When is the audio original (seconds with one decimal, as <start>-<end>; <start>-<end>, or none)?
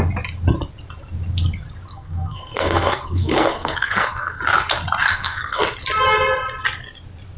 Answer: 0.0-1.9; 4.4-5.1; 5.6-7.4